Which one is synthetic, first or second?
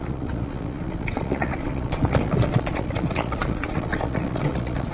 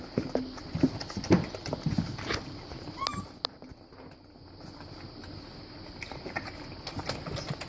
first